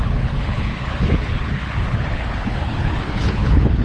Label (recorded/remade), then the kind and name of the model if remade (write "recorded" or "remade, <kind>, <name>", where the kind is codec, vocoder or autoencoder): remade, codec, HILCodec